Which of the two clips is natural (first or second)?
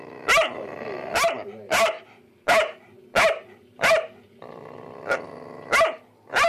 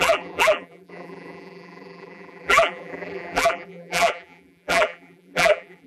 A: first